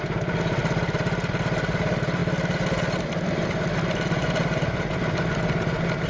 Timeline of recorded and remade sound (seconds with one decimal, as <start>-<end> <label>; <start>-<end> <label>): 0.0-6.1 recorded